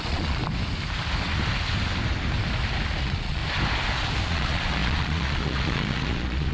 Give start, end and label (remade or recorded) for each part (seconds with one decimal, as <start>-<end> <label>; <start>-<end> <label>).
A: 0.0-0.4 remade; 0.4-3.0 recorded; 3.0-3.4 remade; 3.4-4.3 recorded; 4.3-6.5 remade